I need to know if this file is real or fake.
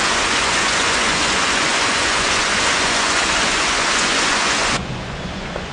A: fake